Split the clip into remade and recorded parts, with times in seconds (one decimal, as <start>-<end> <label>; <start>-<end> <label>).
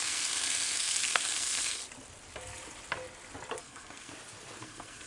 0.0-1.8 remade; 1.8-3.6 recorded; 3.6-4.1 remade; 4.1-4.6 recorded; 4.6-5.1 remade